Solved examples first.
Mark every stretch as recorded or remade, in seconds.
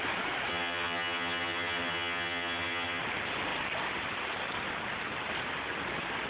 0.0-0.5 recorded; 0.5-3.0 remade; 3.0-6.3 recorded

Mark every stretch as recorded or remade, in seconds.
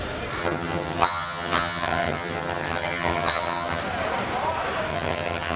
0.0-0.4 recorded; 0.4-3.8 remade; 3.8-4.9 recorded; 4.9-5.6 remade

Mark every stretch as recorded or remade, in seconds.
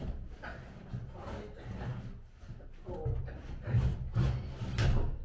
0.0-5.2 recorded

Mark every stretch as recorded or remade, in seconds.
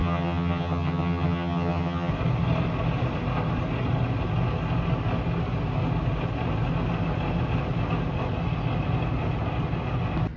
0.0-2.1 remade; 2.1-10.4 recorded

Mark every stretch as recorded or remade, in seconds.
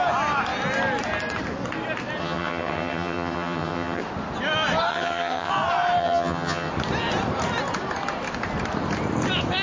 0.0-2.2 recorded; 2.2-4.0 remade; 4.0-4.9 recorded; 4.9-5.5 remade; 5.5-6.0 recorded; 6.0-6.7 remade; 6.7-9.6 recorded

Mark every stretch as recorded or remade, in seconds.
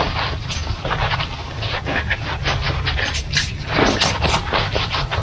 0.0-5.2 recorded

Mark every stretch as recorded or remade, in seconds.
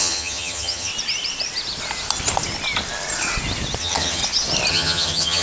0.0-0.9 remade; 0.9-3.8 recorded; 3.8-4.2 remade; 4.2-4.7 recorded; 4.7-5.4 remade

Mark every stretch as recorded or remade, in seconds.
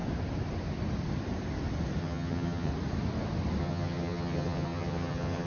0.0-2.0 recorded; 2.0-2.7 remade; 2.7-3.6 recorded; 3.6-5.5 remade